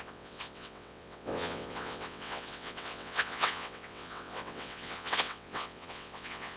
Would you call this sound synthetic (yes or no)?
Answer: yes